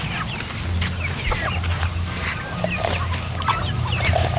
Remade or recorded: recorded